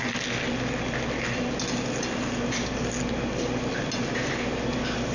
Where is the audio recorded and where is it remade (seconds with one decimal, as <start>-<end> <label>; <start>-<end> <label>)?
0.0-5.1 recorded